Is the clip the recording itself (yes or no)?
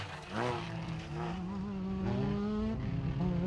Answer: yes